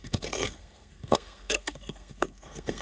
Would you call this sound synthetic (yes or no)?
yes